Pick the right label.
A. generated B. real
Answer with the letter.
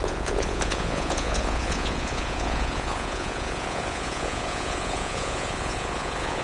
A